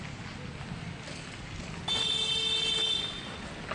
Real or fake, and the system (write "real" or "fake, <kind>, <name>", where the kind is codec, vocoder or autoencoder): real